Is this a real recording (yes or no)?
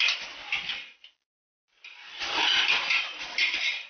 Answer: yes